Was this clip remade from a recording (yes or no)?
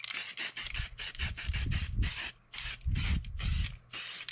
no